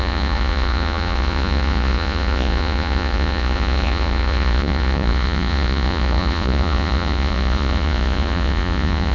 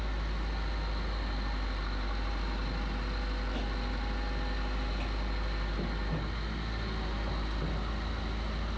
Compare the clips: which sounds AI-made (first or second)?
first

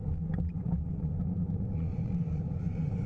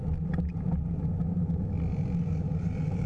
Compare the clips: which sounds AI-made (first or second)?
first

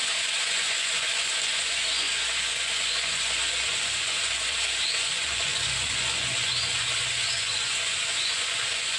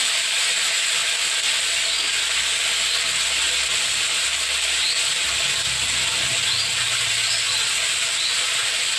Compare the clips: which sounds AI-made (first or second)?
first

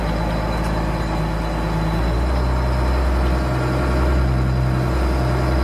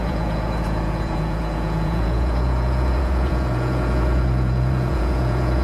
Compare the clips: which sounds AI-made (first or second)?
second